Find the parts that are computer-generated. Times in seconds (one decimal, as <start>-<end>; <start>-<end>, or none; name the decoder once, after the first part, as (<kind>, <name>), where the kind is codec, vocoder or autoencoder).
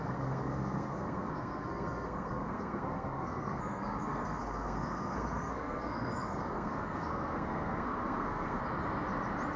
0.0-8.6 (codec, SNAC)